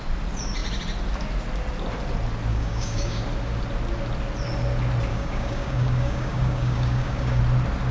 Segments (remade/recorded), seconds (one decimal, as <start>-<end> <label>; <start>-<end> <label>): 0.0-2.5 recorded; 2.5-3.2 remade; 3.2-5.1 recorded; 5.1-7.4 remade; 7.4-7.9 recorded

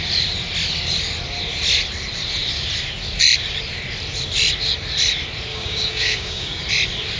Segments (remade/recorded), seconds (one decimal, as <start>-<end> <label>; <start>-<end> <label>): 0.0-5.5 recorded; 5.5-6.6 remade; 6.6-7.2 recorded

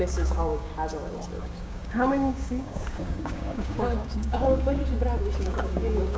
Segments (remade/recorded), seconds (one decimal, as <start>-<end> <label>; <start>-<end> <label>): 0.0-0.7 remade; 0.7-1.4 recorded; 1.4-4.8 remade; 4.8-5.4 recorded; 5.4-6.2 remade

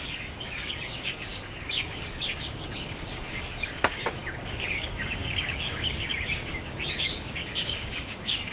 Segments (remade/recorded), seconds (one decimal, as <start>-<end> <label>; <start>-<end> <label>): 0.0-8.5 remade

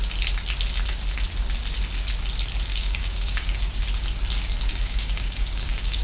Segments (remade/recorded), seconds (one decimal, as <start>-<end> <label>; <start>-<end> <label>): 0.0-2.7 recorded; 2.7-3.8 remade; 3.8-4.7 recorded; 4.7-6.0 remade